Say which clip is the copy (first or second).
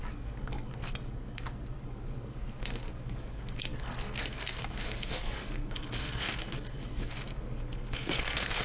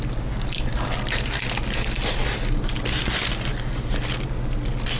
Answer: first